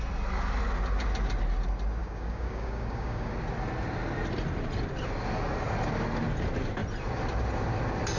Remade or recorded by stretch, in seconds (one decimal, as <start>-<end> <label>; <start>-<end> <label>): 0.0-2.0 recorded; 2.0-3.3 remade; 3.3-8.2 recorded